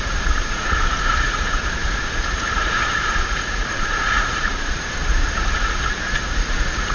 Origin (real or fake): fake